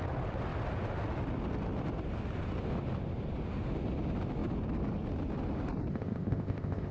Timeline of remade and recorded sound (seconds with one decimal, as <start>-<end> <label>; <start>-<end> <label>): 0.0-5.9 recorded; 5.9-6.9 remade